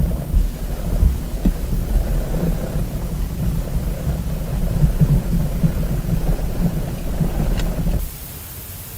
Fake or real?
real